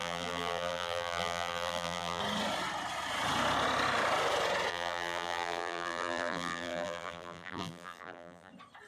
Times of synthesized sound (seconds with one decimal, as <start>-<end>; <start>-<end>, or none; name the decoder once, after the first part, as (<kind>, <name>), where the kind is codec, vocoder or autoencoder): 0.0-2.2 (vocoder, BigVGAN v2); 4.7-8.5